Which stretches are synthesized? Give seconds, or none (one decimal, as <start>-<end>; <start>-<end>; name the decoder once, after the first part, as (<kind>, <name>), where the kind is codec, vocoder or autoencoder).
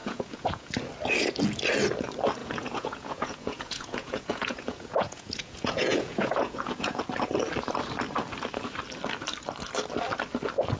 0.0-0.7 (vocoder, Vocos); 2.4-7.0